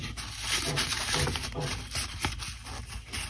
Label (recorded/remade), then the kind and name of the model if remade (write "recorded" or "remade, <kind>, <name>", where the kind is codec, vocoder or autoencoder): recorded